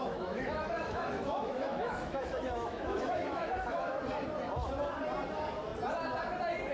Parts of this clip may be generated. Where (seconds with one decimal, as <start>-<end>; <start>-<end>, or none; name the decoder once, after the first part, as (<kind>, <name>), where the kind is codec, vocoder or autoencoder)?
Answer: 0.0-4.0 (autoencoder, DAC-VAE)